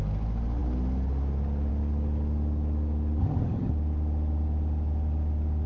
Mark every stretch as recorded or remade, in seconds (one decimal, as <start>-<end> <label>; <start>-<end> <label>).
0.0-3.2 recorded; 3.2-3.7 remade; 3.7-5.7 recorded